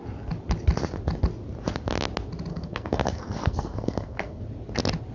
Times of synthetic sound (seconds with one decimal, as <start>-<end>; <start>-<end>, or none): 2.5-4.4